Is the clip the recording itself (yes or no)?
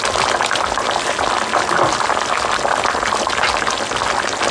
yes